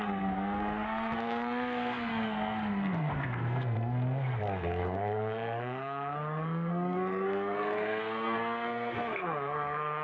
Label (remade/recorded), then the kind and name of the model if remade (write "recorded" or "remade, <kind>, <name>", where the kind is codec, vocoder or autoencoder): remade, codec, SNAC